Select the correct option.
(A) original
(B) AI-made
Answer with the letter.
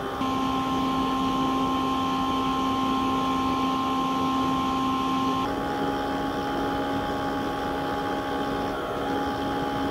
A